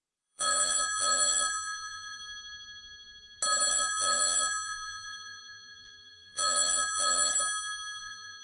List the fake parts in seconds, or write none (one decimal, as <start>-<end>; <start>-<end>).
0.0-2.2; 3.7-7.3; 8.0-8.4